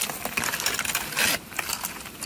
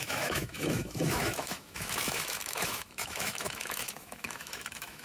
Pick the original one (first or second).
first